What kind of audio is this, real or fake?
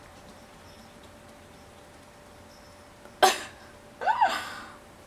real